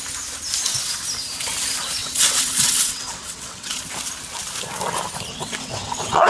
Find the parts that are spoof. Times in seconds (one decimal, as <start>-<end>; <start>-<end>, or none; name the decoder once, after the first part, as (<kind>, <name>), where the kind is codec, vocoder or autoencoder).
2.0-3.8 (vocoder, WaveNeXt); 5.3-6.3